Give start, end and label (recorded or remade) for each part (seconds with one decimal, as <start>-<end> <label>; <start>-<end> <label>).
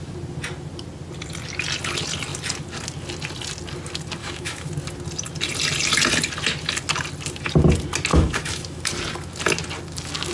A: 0.0-4.2 recorded; 4.2-4.7 remade; 4.7-8.1 recorded; 8.1-8.8 remade; 8.8-10.3 recorded